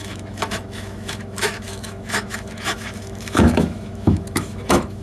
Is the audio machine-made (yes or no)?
yes